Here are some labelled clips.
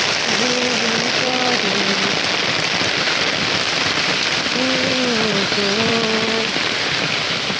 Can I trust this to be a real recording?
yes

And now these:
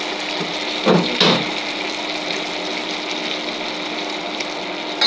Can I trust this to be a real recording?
yes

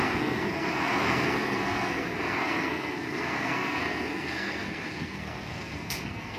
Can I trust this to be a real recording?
no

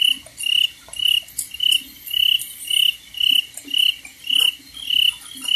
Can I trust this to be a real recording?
yes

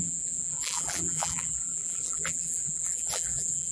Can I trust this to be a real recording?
no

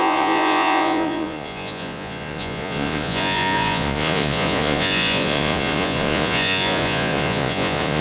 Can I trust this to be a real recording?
no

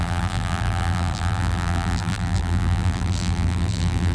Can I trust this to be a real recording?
no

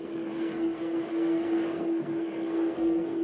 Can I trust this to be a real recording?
no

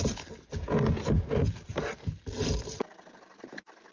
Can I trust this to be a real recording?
yes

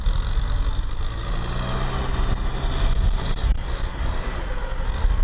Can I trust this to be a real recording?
yes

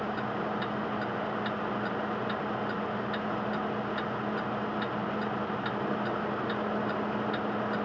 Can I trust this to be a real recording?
yes